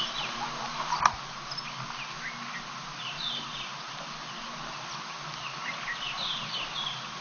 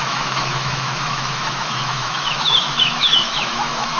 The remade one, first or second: second